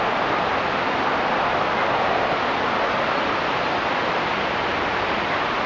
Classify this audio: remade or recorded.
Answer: recorded